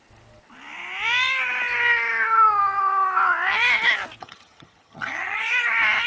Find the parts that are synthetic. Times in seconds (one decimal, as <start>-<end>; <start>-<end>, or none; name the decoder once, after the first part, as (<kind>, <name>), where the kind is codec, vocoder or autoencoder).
4.2-5.4 (vocoder, HiFi-GAN)